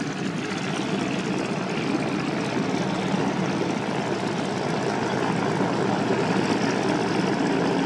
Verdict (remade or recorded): recorded